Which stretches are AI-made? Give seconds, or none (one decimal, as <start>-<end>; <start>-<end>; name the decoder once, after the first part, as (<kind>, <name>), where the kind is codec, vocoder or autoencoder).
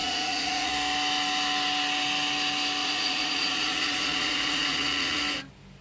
0.0-0.7 (vocoder, Vocos); 2.8-5.2